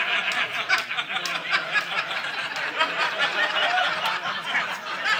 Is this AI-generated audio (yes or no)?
no